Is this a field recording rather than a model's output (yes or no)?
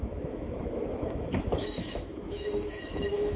no